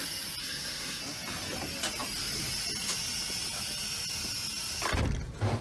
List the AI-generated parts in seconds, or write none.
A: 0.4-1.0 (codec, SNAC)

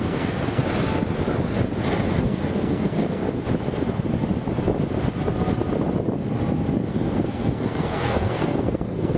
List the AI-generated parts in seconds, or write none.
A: 0.0-0.6 (codec, SNAC); 2.2-3.2; 6.9-9.2

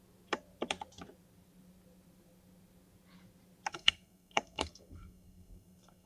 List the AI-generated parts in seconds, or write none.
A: 3.7-6.1 (codec, SNAC)

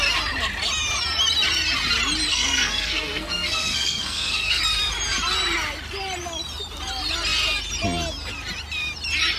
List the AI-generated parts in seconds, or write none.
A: 2.3-4.6 (codec, SNAC)

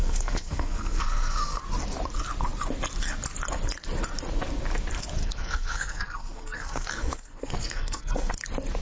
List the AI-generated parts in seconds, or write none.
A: 0.0-1.6 (codec, SNAC); 5.2-8.3